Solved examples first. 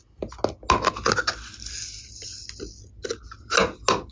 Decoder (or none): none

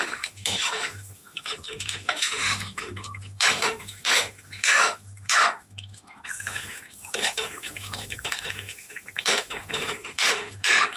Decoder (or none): autoencoder, DAC-VAE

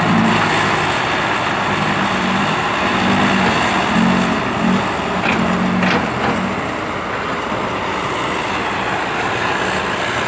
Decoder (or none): none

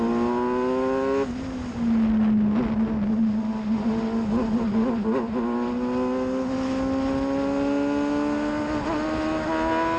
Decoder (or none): none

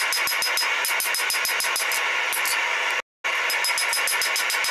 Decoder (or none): none